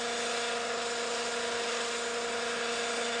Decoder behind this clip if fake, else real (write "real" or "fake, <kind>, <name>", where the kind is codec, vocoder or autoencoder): real